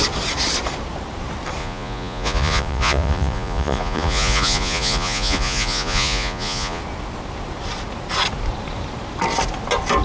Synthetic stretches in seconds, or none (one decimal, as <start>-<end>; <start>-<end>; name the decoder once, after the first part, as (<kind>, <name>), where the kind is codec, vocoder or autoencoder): 1.6-6.8 (vocoder, Vocos)